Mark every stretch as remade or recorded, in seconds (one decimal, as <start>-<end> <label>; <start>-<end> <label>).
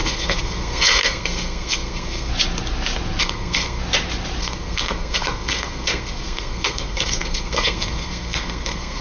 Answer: 0.0-2.3 remade; 2.3-3.2 recorded; 3.2-3.8 remade; 3.8-4.4 recorded; 4.4-9.0 remade